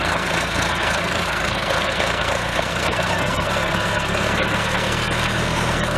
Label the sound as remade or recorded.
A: remade